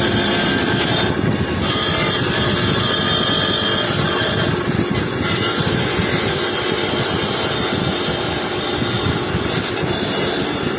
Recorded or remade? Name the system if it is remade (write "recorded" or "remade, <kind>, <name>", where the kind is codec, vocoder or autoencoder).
recorded